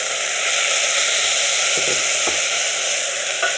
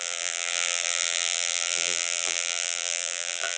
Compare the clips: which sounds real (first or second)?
first